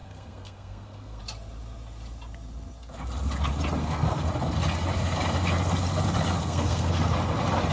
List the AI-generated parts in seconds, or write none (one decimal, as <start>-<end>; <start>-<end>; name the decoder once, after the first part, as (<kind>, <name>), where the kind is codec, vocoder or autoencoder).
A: 0.0-1.2 (codec, SNAC); 3.8-4.3; 6.4-6.9